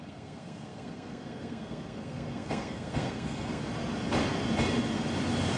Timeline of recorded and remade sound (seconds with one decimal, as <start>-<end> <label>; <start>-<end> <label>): 0.0-3.6 remade; 3.6-5.6 recorded